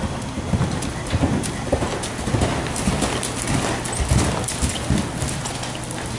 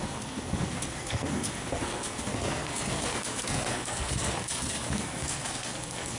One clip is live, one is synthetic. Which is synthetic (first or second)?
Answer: second